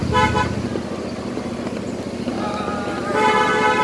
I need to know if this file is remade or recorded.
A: recorded